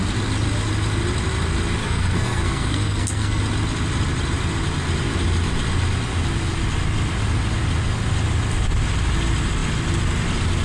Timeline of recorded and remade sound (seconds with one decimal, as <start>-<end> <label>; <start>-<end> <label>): 0.0-1.8 recorded; 1.8-3.4 remade; 3.4-10.6 recorded